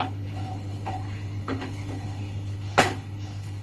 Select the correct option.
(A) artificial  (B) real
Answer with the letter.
A